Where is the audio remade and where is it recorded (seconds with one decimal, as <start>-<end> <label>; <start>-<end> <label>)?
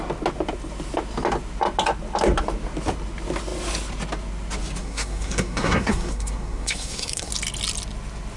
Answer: 0.0-4.8 recorded; 4.8-7.3 remade; 7.3-8.4 recorded